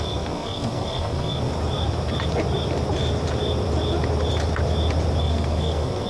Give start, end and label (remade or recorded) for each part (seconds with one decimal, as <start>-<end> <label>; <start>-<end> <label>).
0.0-1.5 remade; 1.5-5.2 recorded; 5.2-6.1 remade